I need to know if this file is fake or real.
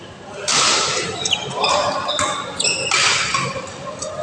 real